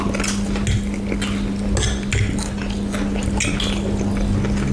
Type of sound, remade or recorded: recorded